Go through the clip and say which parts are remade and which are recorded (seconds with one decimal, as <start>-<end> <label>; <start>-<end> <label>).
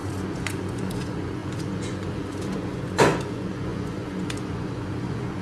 0.0-5.4 remade